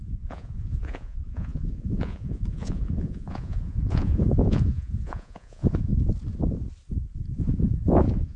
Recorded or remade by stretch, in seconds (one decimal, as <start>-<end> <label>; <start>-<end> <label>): 0.0-5.9 remade; 5.9-7.3 recorded; 7.3-8.4 remade